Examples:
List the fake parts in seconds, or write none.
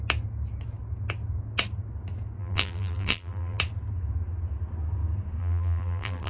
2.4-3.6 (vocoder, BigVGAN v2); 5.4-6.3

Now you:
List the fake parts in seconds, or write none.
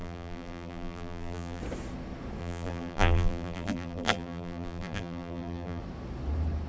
0.0-1.6 (vocoder, BigVGAN v2); 2.4-5.8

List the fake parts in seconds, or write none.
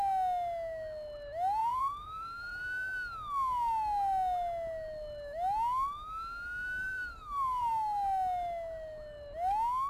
1.6-2.6 (vocoder, BigVGAN v2); 6.8-7.7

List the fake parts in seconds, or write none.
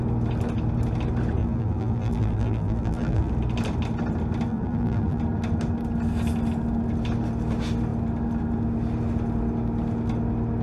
1.4-3.3 (vocoder, BigVGAN v2); 4.5-5.2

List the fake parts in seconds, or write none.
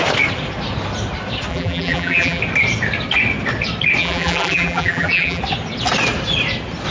1.5-2.4 (vocoder, BigVGAN v2); 4.0-5.4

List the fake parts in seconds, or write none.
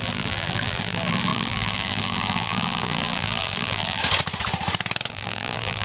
0.0-4.0 (vocoder, BigVGAN v2); 5.1-5.8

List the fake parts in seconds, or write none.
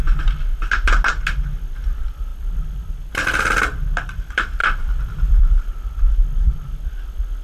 2.3-3.1 (vocoder, BigVGAN v2); 4.6-5.4